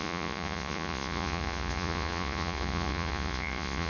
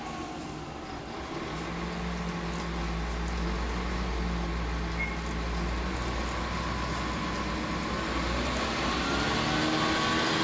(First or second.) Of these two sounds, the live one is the second